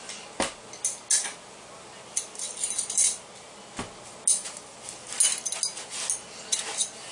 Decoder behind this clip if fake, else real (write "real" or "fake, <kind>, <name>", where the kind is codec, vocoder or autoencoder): real